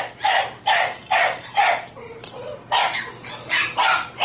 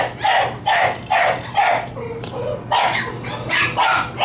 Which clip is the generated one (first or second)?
first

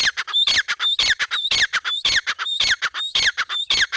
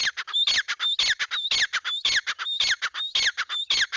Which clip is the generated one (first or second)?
first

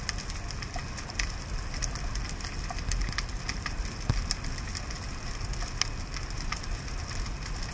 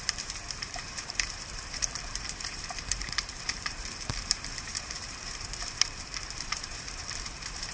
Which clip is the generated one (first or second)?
second